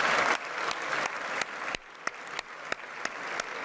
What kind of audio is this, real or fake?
real